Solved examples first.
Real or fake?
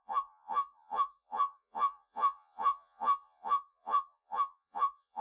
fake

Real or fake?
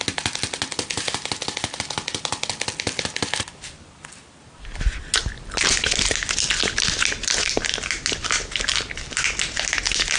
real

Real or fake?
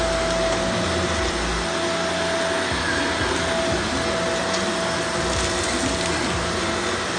real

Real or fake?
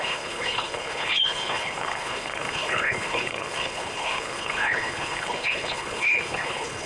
fake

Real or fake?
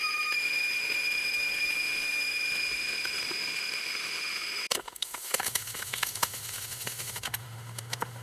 fake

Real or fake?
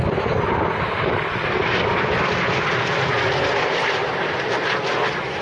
real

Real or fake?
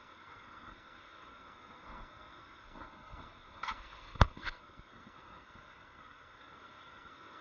fake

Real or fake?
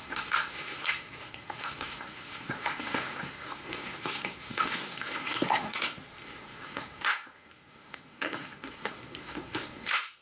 fake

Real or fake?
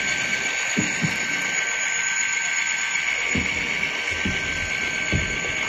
real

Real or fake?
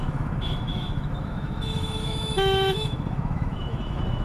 fake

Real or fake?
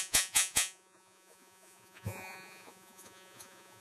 fake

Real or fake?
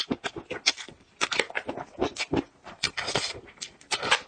real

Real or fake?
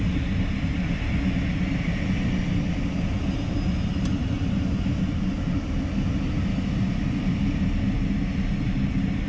real